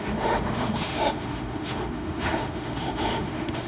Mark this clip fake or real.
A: fake